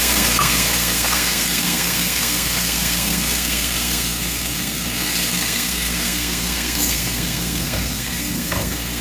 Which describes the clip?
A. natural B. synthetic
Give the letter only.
B